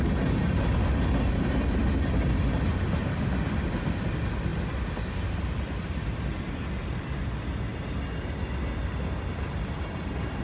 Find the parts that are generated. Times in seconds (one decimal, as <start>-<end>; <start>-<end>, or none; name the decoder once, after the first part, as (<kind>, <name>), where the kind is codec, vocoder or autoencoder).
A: none